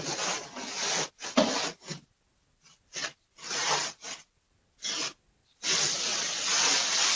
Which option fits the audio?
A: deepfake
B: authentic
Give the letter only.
B